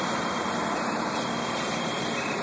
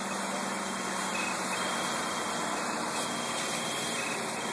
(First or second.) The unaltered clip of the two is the second